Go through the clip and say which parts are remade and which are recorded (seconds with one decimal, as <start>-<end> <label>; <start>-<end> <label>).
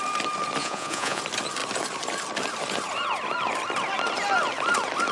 0.0-0.6 recorded; 0.6-1.2 remade; 1.2-5.1 recorded